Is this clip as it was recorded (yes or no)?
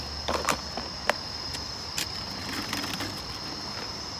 yes